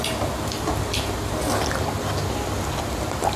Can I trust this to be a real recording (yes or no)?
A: yes